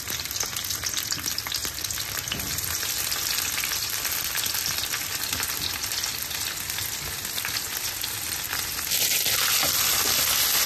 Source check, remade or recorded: recorded